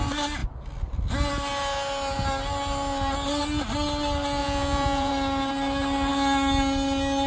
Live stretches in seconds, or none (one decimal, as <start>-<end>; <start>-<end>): 0.0-4.4; 5.1-7.3